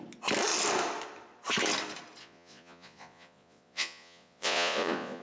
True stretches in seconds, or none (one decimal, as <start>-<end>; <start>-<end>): 0.0-2.2